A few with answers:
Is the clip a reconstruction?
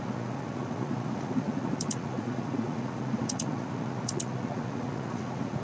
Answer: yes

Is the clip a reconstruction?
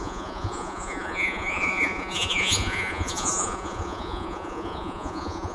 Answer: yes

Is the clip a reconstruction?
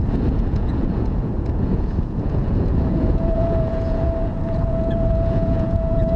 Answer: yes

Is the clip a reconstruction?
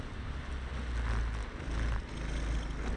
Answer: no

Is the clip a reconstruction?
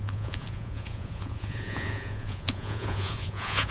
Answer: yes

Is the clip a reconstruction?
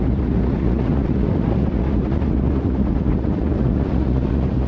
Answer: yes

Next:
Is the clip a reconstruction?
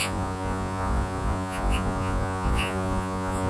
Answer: yes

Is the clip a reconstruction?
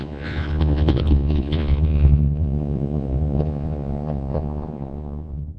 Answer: yes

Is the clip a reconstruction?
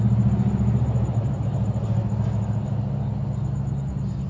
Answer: no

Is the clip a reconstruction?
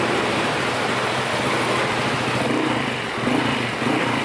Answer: no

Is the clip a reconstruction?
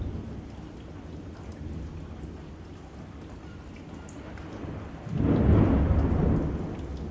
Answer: no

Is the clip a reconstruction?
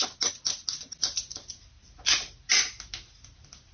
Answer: no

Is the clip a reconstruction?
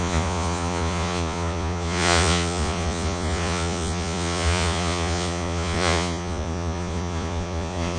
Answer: yes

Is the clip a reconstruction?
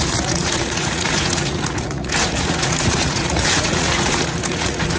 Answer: yes